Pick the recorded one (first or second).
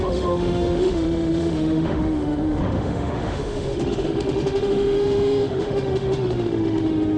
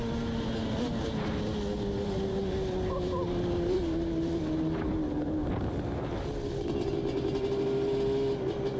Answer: second